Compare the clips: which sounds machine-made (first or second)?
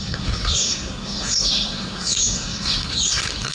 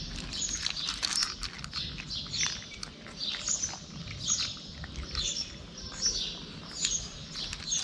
first